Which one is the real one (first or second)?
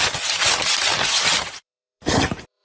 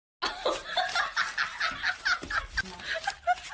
second